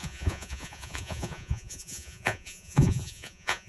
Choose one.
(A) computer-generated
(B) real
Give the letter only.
A